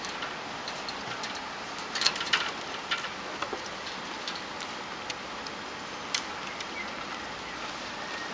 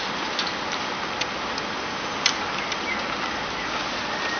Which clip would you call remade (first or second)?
first